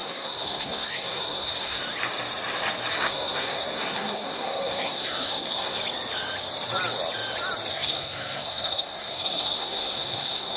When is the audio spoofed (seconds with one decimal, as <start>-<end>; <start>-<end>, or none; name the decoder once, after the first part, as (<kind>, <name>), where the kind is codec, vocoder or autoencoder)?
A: 0.0-1.8 (codec, SNAC); 2.9-5.8; 7.7-10.6